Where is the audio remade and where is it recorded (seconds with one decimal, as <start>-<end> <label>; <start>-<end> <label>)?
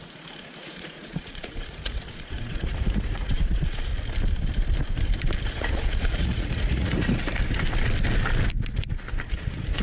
0.0-3.9 remade; 3.9-5.5 recorded; 5.5-7.3 remade; 7.3-9.3 recorded; 9.3-9.8 remade